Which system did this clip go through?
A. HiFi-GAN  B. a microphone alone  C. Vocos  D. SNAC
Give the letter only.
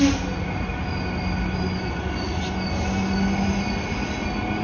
B